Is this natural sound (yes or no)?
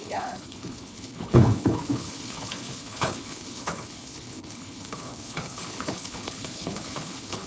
no